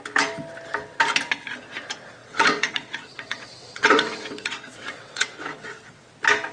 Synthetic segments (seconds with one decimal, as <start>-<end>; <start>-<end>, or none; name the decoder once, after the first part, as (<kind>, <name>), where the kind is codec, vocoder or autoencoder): 2.2-6.1 (vocoder, WaveNeXt)